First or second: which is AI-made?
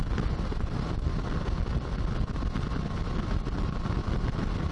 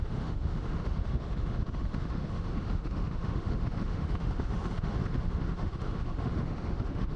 second